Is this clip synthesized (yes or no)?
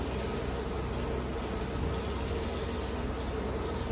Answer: no